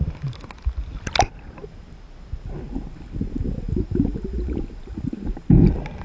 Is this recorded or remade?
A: recorded